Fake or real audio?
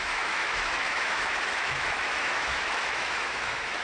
fake